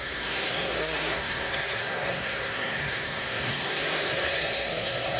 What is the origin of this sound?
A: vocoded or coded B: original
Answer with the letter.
A